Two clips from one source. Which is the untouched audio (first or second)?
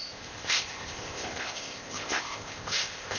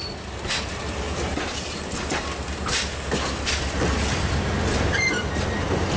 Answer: second